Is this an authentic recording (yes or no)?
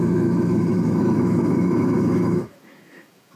no